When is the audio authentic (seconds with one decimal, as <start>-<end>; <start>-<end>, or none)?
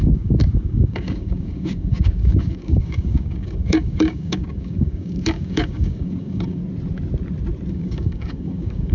6.6-7.7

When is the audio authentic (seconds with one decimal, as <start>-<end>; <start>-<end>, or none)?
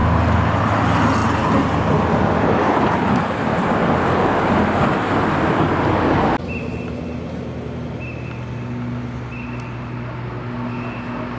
0.0-11.4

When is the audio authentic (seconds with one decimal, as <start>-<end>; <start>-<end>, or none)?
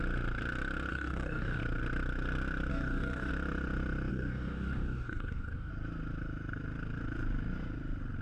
0.0-0.9; 1.6-2.7; 3.3-4.1; 5.7-8.2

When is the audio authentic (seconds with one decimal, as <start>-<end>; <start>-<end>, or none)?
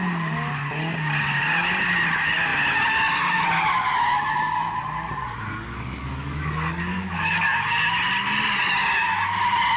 0.0-5.5; 7.6-9.8